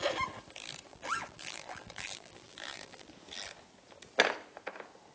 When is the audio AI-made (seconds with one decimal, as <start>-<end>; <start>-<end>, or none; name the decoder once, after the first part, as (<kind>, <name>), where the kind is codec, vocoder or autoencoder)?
0.9-3.1 (vocoder, BigVGAN v2)